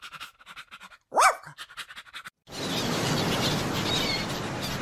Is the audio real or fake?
real